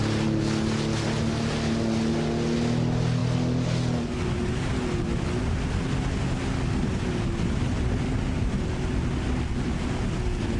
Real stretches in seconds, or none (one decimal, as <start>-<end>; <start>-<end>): 0.0-10.6